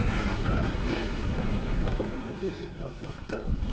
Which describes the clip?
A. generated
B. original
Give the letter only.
A